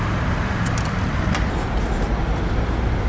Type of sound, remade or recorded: recorded